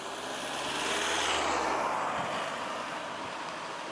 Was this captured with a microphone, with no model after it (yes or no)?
yes